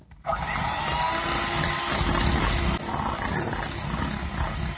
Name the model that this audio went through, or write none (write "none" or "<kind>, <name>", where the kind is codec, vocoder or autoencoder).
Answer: none